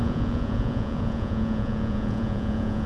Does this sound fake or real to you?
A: fake